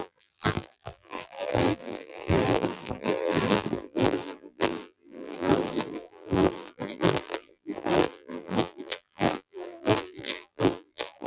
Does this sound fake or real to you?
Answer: fake